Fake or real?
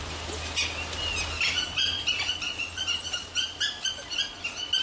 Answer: real